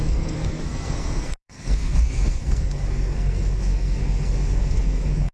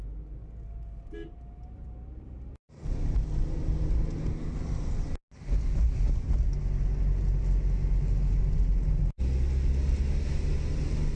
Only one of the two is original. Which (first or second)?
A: second